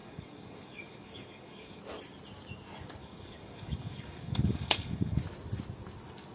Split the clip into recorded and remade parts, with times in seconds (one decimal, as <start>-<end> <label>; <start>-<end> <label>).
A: 0.0-1.8 remade; 1.8-3.0 recorded; 3.0-5.2 remade; 5.2-6.3 recorded